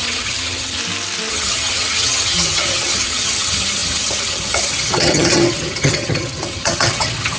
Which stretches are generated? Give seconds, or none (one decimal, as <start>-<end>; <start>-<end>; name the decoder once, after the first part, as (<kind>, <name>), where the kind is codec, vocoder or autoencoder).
0.0-0.8 (vocoder, HiFi-GAN); 1.3-7.4